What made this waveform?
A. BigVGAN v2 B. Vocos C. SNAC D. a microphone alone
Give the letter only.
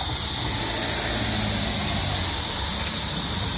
D